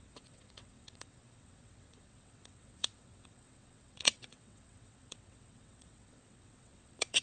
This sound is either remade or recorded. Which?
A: remade